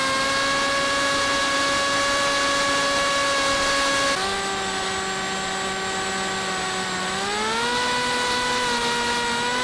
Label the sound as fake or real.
real